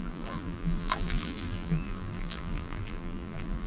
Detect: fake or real fake